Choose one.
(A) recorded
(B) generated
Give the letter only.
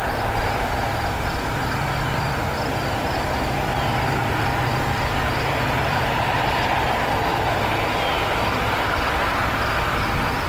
A